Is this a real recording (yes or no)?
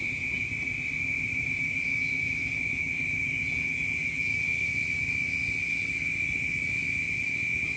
yes